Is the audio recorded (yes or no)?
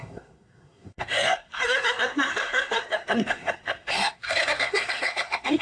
no